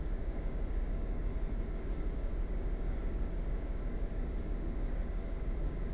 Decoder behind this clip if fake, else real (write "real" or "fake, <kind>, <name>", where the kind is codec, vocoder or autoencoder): fake, codec, DAC